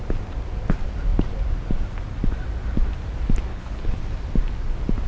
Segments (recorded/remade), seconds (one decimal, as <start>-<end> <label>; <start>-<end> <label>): 0.0-3.5 recorded; 3.5-4.0 remade; 4.0-5.1 recorded